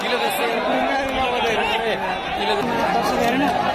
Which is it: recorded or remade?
recorded